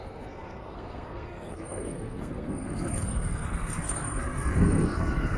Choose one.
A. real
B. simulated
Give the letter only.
B